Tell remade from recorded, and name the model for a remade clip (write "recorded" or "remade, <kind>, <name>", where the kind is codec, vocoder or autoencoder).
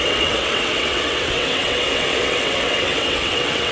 remade, vocoder, WaveNeXt